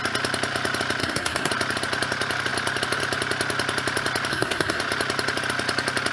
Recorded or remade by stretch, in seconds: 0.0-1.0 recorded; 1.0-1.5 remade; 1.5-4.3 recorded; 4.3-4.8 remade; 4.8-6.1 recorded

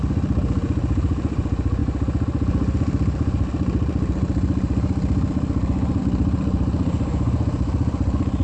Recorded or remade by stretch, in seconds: 0.0-8.4 recorded

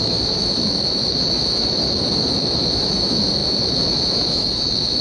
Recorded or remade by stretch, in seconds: 0.0-5.0 remade

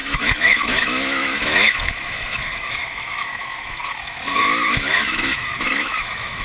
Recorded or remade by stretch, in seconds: 0.0-6.4 remade

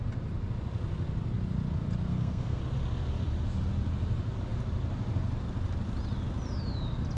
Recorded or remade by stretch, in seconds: 0.0-2.1 recorded; 2.1-2.6 remade; 2.6-7.2 recorded

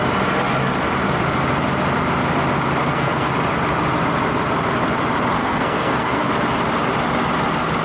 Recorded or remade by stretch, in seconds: 0.0-2.8 recorded; 2.8-3.3 remade; 3.3-5.4 recorded; 5.4-6.3 remade; 6.3-7.8 recorded

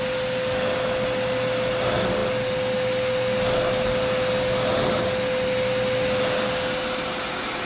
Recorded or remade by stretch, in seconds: 0.0-7.7 recorded

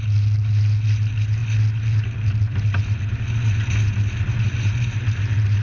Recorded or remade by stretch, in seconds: 0.0-5.6 recorded